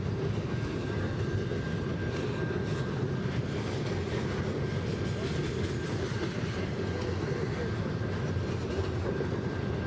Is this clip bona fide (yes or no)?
yes